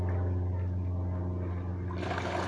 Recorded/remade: recorded